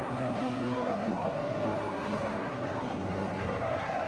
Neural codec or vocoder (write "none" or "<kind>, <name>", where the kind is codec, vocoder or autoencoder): codec, SNAC